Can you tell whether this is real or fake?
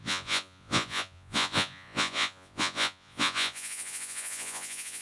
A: fake